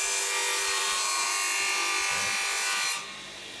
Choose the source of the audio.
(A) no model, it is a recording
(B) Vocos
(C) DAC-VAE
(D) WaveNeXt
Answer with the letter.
A